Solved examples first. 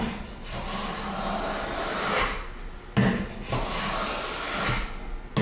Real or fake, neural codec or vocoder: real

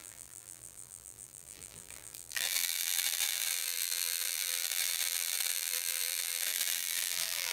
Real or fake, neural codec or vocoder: fake, vocoder, BigVGAN v2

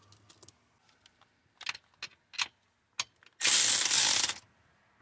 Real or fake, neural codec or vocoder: real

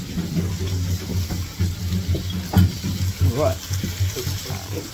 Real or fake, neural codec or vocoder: real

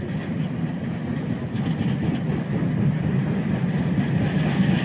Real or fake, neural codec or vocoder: real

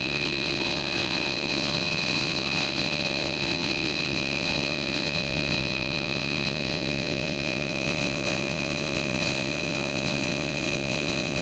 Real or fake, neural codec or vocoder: fake, vocoder, WaveNeXt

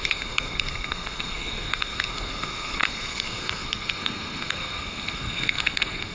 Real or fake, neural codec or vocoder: fake, codec, SNAC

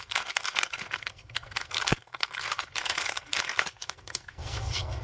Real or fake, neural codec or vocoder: fake, codec, SNAC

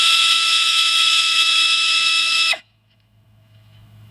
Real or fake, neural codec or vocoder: fake, autoencoder, DAC-VAE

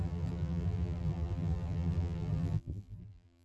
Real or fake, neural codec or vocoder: fake, vocoder, BigVGAN v2